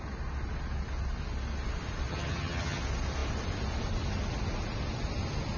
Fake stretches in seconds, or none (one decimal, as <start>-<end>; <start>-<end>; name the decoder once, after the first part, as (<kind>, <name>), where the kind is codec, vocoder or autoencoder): 2.1-2.8 (vocoder, HiFi-GAN)